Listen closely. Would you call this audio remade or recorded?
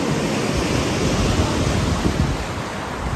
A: recorded